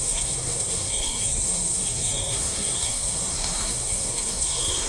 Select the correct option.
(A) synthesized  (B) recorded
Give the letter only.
A